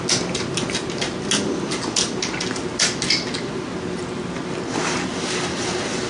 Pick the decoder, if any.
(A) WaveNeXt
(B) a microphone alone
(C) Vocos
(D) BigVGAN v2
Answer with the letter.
B